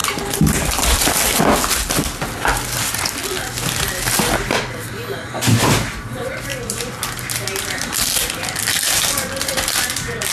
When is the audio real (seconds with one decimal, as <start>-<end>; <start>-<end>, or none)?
1.1-6.5; 7.2-10.3